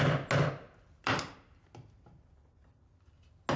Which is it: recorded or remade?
recorded